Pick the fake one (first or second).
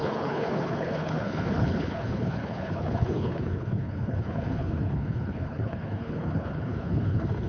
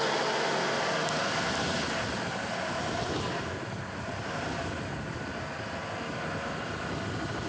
first